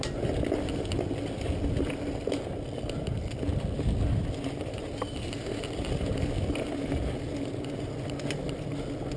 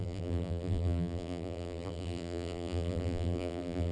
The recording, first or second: first